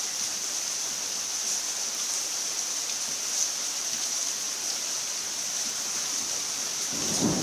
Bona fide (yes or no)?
yes